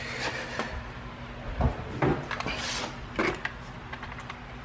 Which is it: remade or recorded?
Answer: remade